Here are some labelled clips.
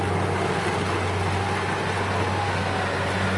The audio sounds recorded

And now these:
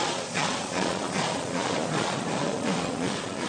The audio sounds remade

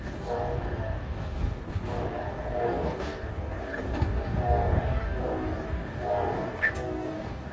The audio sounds remade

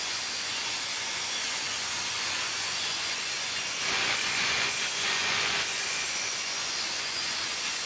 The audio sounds remade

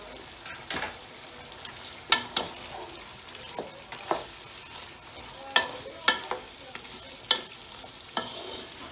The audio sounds recorded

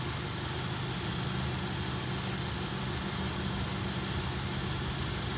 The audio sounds recorded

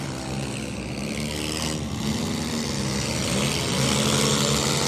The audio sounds recorded